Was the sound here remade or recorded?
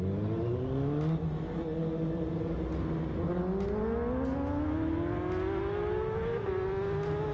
recorded